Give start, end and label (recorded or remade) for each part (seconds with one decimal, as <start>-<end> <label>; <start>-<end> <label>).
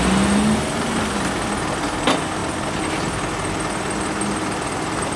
0.0-5.2 recorded